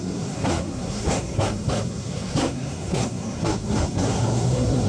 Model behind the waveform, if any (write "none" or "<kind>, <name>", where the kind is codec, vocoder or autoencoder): codec, SNAC